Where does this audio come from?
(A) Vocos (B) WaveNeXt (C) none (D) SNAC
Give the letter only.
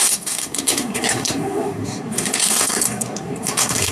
D